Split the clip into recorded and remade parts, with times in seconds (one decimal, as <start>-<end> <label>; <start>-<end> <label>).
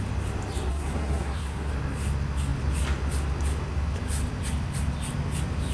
0.0-0.7 recorded; 0.7-1.7 remade; 1.7-5.7 recorded